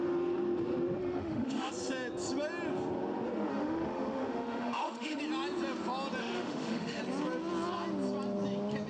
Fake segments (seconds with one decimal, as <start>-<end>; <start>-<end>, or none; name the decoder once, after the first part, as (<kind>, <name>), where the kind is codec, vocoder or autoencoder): 1.0-1.7 (autoencoder, DAC-VAE); 3.5-5.2; 6.2-7.0